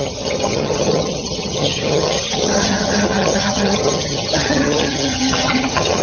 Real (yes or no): no